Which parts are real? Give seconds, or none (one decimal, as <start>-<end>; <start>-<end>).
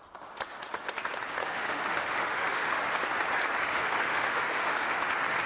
0.0-1.4; 2.8-3.7; 5.1-5.5